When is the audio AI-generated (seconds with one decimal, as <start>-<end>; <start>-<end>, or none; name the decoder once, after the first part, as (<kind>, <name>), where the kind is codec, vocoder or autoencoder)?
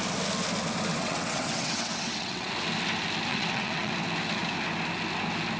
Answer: 0.9-2.5 (vocoder, WaveNeXt); 3.3-3.9